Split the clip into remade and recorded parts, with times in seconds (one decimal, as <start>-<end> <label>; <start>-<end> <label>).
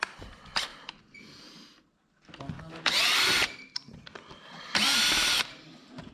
0.0-0.7 remade; 0.7-3.0 recorded; 3.0-6.1 remade